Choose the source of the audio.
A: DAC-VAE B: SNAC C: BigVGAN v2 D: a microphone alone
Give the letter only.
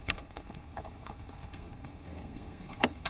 B